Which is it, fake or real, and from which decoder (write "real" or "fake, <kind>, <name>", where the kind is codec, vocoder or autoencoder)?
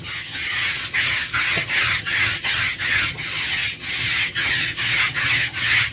fake, vocoder, HiFi-GAN